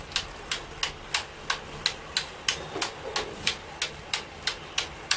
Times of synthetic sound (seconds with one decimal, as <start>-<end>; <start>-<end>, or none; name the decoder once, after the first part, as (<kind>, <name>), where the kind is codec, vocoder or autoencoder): 0.0-0.8 (vocoder, BigVGAN v2); 3.9-5.2